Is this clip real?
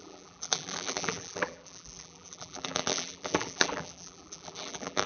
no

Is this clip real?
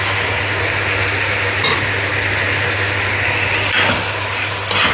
yes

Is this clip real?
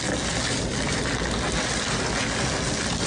yes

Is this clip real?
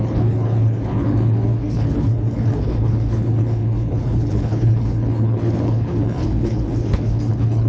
no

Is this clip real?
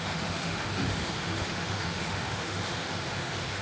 no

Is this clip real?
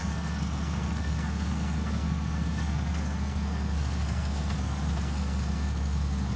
no